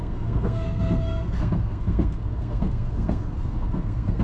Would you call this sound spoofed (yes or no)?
yes